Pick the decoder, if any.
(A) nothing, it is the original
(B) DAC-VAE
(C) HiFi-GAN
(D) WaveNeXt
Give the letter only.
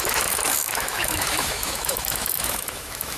B